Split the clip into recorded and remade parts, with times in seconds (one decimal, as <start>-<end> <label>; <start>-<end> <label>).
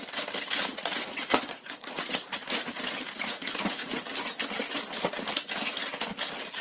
0.0-0.7 recorded; 0.7-4.0 remade; 4.0-6.6 recorded